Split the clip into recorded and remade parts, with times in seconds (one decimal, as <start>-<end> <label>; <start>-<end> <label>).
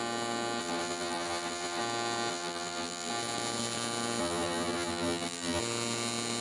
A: 0.0-0.6 recorded; 0.6-1.8 remade; 1.8-2.3 recorded; 2.3-3.1 remade; 3.1-4.2 recorded; 4.2-5.6 remade; 5.6-6.4 recorded